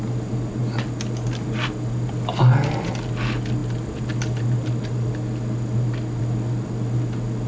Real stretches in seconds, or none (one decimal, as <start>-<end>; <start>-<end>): 0.0-7.5